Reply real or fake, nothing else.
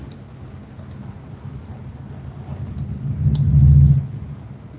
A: real